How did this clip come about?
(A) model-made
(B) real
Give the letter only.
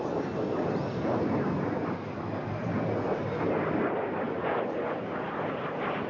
B